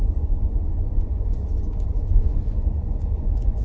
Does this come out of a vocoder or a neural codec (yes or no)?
yes